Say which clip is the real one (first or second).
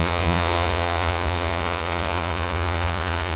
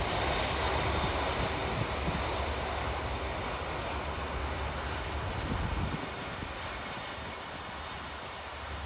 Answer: second